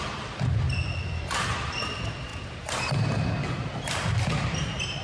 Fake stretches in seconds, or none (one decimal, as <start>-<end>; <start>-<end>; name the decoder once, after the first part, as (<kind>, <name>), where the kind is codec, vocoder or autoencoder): none